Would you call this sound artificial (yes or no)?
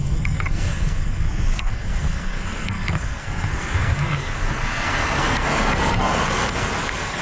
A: yes